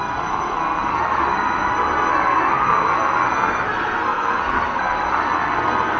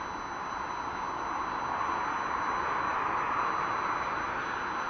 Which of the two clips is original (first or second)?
second